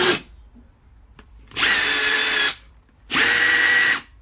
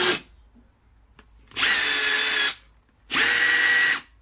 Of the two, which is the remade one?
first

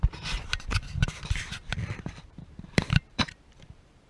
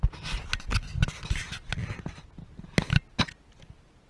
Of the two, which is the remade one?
first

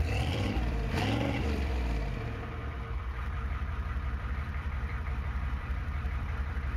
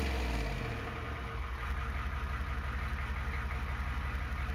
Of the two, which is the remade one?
first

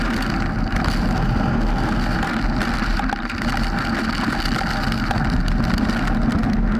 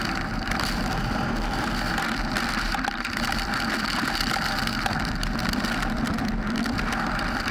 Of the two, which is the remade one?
second